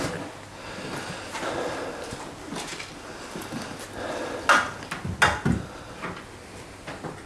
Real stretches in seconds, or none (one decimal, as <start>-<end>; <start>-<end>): 0.0-7.3